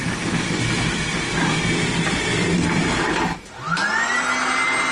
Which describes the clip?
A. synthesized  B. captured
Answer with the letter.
B